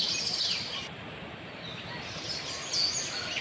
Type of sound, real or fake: real